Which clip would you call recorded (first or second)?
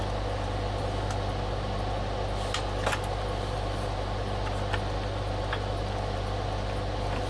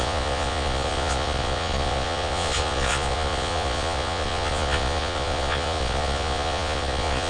first